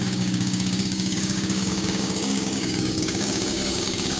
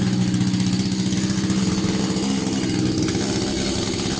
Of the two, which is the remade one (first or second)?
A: first